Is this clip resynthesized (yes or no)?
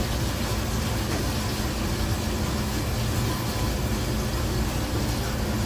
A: no